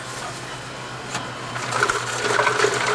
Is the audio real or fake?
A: real